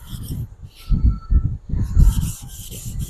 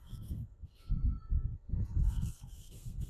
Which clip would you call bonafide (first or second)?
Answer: first